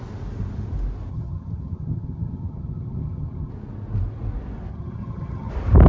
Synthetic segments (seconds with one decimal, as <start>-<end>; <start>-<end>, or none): 1.1-3.5; 4.7-5.5